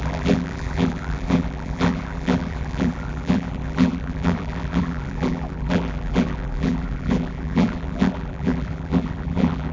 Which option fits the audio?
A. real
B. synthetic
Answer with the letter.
B